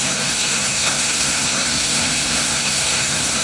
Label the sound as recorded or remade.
remade